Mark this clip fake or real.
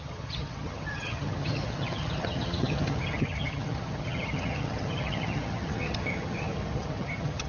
fake